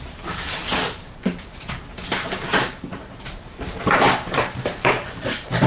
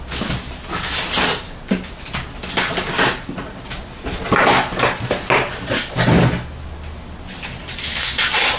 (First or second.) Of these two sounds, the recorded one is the second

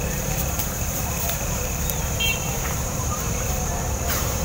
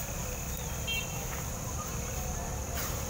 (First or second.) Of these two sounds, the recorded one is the second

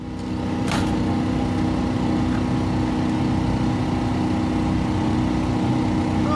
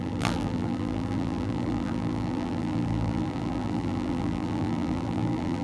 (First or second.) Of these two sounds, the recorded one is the first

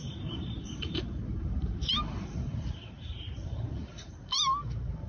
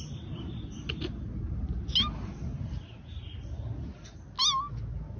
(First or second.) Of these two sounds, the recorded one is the second